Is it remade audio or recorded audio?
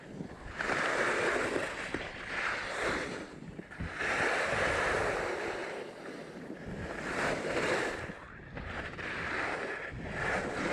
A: recorded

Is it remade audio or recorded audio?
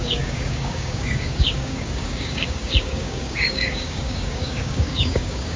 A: remade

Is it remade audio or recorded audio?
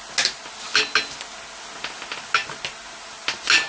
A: recorded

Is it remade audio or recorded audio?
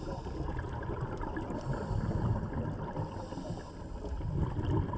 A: recorded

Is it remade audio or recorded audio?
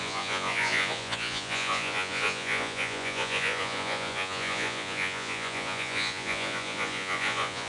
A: remade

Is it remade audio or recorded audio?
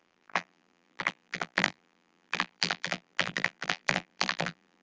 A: remade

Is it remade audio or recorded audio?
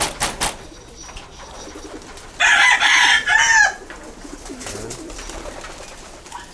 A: recorded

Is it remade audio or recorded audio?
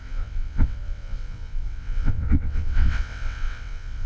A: remade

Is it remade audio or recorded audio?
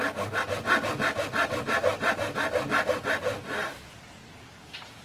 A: recorded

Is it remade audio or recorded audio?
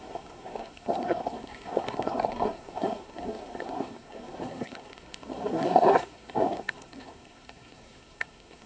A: remade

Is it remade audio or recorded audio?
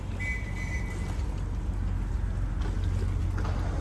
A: recorded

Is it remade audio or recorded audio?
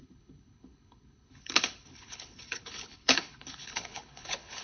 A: remade